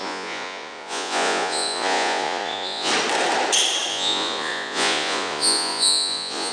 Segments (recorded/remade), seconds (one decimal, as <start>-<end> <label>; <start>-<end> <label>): 0.0-2.9 remade; 2.9-3.9 recorded; 3.9-6.5 remade